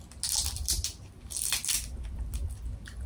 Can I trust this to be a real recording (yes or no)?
yes